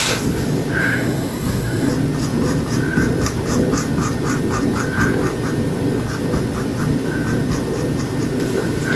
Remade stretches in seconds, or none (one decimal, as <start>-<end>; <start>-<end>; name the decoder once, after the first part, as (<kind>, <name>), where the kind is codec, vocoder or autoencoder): 0.8-1.9 (codec, SNAC)